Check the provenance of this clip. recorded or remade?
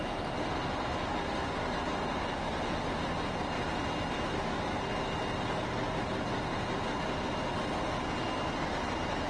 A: recorded